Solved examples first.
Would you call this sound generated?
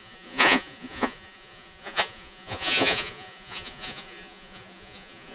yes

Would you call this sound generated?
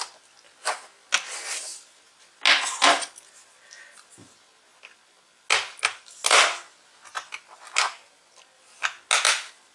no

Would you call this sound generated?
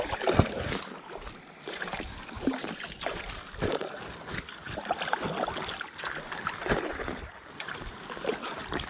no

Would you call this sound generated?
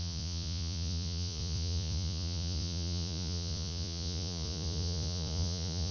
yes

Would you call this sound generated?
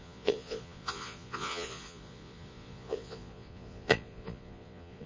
yes